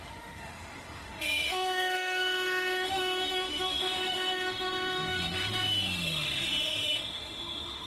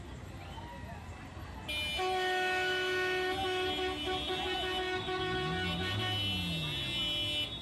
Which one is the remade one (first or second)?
first